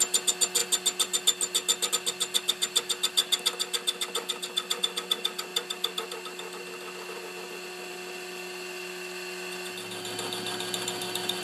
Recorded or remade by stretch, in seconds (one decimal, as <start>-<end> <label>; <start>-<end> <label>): 0.0-11.4 recorded